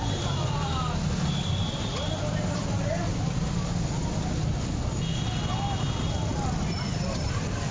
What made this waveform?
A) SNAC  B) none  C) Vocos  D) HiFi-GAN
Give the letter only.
B